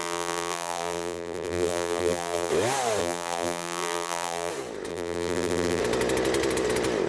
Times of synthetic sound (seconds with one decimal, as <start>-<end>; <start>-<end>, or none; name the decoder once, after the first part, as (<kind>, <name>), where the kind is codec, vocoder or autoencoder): 0.0-2.5 (vocoder, BigVGAN v2); 3.0-4.5; 4.9-5.8

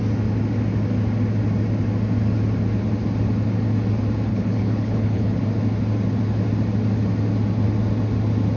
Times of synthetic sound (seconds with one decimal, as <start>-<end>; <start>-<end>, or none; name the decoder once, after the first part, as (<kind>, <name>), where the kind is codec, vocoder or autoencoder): 4.3-5.4 (codec, HILCodec)